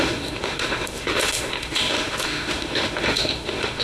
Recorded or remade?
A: remade